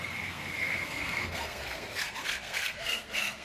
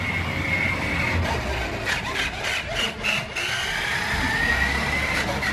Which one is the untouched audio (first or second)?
second